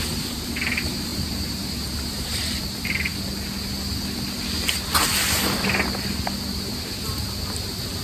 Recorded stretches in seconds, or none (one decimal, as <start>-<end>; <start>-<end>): 3.1-6.7